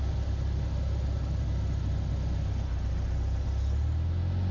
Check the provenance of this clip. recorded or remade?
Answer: recorded